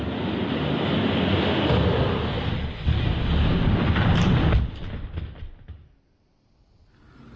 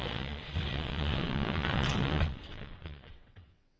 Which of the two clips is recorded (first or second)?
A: first